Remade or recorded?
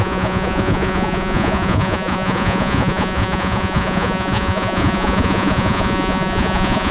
remade